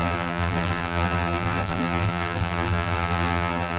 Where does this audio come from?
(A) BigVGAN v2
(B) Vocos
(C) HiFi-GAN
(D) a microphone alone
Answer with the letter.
A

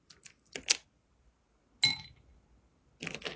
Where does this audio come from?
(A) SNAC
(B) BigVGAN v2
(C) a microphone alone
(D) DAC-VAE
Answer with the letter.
C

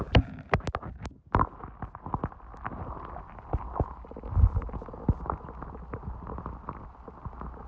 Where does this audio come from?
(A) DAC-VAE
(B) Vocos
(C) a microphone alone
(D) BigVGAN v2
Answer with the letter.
C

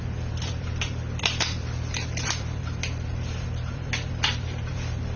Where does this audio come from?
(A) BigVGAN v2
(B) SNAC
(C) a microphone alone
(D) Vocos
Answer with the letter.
A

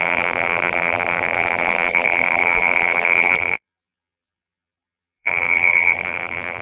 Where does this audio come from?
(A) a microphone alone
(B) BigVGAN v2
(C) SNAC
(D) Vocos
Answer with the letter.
B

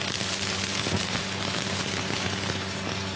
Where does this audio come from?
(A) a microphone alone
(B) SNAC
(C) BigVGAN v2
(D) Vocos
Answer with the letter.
C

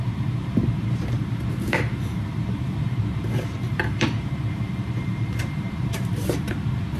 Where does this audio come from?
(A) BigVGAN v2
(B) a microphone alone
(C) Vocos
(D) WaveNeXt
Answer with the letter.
A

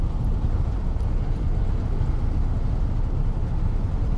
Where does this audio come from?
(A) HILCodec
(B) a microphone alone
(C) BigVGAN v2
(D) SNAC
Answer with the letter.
B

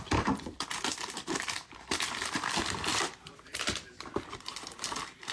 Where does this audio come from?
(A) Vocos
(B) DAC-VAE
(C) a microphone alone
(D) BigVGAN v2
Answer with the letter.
D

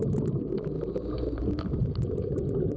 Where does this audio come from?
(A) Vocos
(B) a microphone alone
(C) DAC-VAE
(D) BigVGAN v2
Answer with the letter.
B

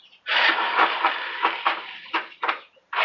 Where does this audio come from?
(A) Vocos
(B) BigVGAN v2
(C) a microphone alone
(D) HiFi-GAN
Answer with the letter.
B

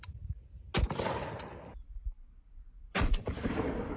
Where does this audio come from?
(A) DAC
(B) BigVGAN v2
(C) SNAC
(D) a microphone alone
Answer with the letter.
D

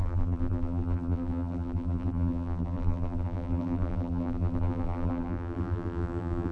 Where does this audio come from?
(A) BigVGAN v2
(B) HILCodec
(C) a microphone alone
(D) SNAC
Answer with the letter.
A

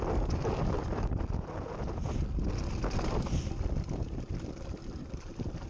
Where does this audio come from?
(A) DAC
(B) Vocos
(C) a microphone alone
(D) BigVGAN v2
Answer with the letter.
C